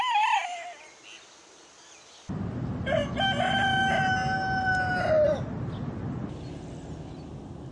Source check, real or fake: real